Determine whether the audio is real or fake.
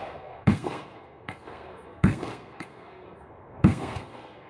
fake